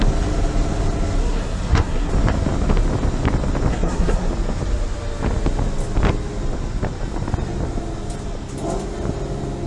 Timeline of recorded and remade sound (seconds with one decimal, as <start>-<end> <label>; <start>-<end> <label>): 0.0-1.2 recorded; 1.2-2.1 remade; 2.1-3.7 recorded; 3.7-4.3 remade; 4.3-9.7 recorded